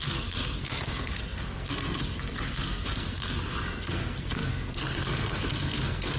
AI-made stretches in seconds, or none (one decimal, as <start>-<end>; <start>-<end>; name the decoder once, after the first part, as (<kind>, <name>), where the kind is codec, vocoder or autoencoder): 0.0-6.2 (codec, SNAC)